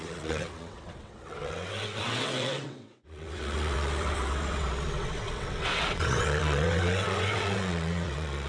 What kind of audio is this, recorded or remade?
remade